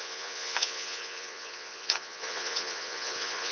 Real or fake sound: fake